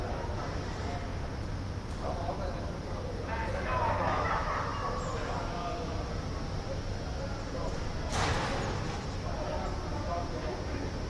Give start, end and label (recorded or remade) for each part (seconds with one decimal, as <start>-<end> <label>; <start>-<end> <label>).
0.0-3.4 recorded; 3.4-4.3 remade; 4.3-11.1 recorded